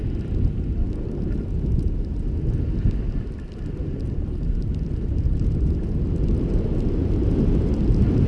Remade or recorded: recorded